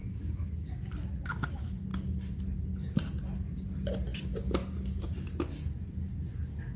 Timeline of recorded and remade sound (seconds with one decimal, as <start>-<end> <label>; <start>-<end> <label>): 0.0-0.7 remade; 0.7-6.8 recorded